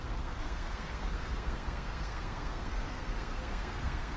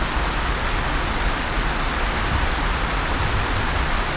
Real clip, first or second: second